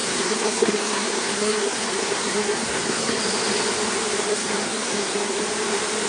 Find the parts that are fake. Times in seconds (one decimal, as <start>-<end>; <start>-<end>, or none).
0.0-3.2; 4.3-5.4